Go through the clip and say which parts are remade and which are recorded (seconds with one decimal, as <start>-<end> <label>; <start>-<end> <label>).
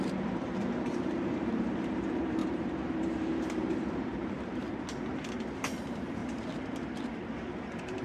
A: 0.0-4.7 remade; 4.7-5.8 recorded; 5.8-8.0 remade